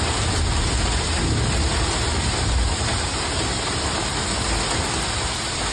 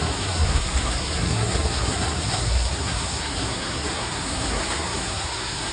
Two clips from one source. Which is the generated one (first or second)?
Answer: second